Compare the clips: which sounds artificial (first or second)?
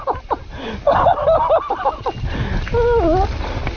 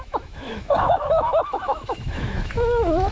second